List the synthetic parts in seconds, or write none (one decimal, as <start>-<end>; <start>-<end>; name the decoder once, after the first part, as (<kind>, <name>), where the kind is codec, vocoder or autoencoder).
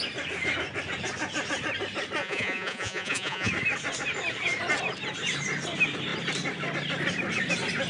2.2-3.5 (vocoder, Vocos)